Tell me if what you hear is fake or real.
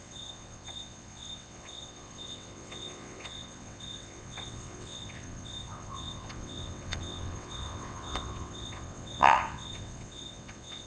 fake